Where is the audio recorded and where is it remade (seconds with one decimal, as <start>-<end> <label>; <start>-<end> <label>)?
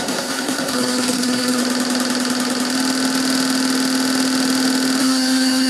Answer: 0.0-1.6 remade; 1.6-5.0 recorded; 5.0-5.7 remade